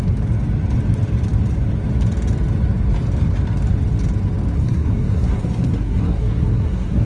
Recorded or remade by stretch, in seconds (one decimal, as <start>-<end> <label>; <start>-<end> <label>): 0.0-4.6 recorded; 4.6-7.1 remade